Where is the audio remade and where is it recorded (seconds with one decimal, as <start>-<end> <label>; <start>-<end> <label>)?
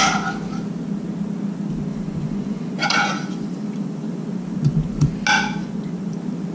0.0-1.9 recorded; 1.9-5.1 remade; 5.1-5.6 recorded; 5.6-6.1 remade; 6.1-6.5 recorded